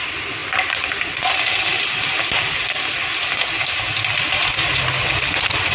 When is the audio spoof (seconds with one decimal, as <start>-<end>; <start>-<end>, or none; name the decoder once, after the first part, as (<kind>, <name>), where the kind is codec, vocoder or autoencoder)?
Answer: none